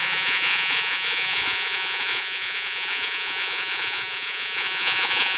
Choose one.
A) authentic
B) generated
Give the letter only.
B